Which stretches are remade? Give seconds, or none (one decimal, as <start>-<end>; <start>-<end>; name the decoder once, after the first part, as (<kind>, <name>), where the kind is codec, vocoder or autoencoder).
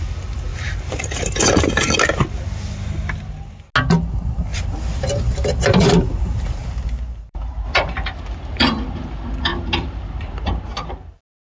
0.5-1.2 (vocoder, BigVGAN v2); 6.6-7.4; 9.5-10.9